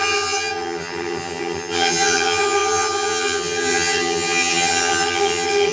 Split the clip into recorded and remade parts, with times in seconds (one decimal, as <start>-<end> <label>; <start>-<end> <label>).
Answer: 0.0-5.7 remade